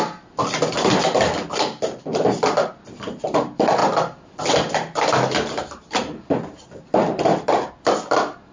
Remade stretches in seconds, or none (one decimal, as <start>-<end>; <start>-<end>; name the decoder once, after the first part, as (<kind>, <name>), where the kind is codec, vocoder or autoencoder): none